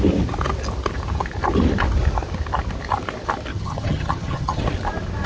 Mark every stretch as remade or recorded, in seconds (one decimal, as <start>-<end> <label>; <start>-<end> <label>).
0.0-3.5 recorded; 3.5-4.6 remade; 4.6-5.3 recorded